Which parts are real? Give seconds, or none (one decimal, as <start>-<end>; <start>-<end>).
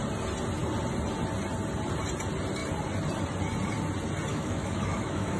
0.0-4.3